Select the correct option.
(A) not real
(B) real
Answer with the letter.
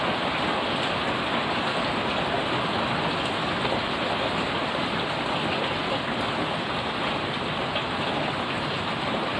B